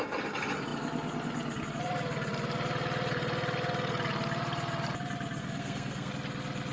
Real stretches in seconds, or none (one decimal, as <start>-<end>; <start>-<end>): 0.0-5.4; 6.1-6.7